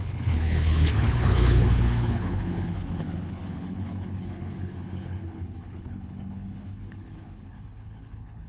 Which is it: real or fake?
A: fake